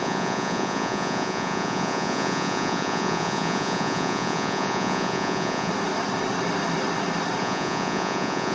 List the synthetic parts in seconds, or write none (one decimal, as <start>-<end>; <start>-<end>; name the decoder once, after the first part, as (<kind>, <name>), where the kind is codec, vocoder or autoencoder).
0.0-5.7 (vocoder, Vocos); 7.4-8.5